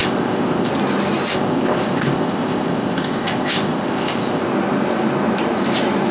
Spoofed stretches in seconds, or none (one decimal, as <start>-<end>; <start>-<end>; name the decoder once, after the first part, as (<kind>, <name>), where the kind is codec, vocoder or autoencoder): 0.0-0.7 (codec, ZipCodec); 1.3-4.4